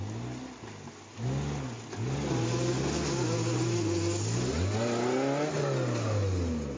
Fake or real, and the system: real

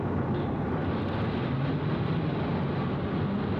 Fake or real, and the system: real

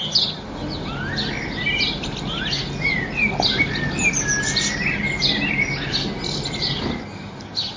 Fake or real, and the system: real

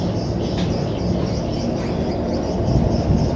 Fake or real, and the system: real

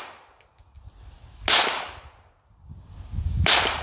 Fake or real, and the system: real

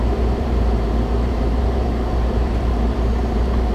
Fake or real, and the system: fake, vocoder, BigVGAN v2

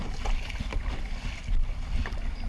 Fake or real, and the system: real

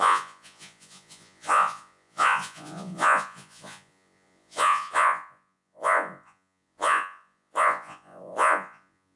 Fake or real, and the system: fake, vocoder, Vocos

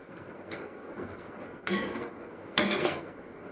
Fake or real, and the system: fake, codec, SNAC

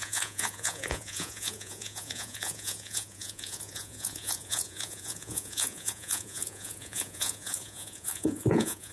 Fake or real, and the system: fake, vocoder, Vocos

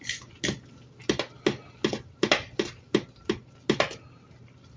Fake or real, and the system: real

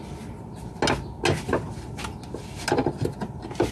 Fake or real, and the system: real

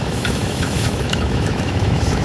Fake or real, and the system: fake, autoencoder, DAC-VAE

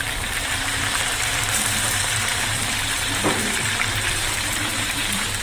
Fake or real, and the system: fake, vocoder, BigVGAN v2